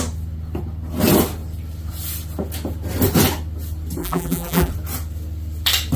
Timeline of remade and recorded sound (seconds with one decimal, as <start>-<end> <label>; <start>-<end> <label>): 0.0-4.0 recorded; 4.0-4.7 remade; 4.7-6.0 recorded